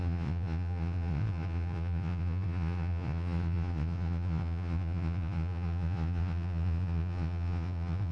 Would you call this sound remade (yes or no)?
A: yes